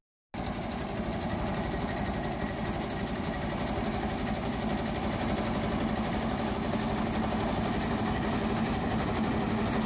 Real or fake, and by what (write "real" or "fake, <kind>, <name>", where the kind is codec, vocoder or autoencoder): real